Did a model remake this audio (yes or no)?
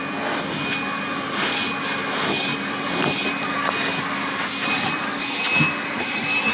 no